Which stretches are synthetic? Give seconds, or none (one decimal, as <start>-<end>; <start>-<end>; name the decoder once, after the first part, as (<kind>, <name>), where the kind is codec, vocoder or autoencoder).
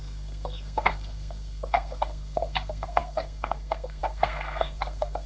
0.0-5.3 (codec, SNAC)